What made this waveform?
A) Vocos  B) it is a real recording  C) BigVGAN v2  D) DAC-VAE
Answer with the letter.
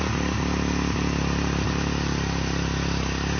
B